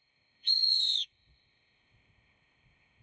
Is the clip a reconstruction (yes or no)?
yes